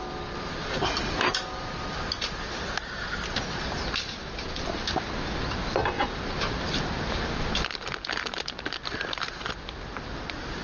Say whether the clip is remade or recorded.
recorded